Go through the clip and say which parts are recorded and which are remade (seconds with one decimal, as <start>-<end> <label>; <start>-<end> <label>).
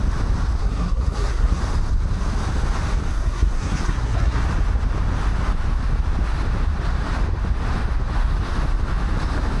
0.0-0.6 recorded; 0.6-1.6 remade; 1.6-3.1 recorded; 3.1-4.4 remade; 4.4-9.6 recorded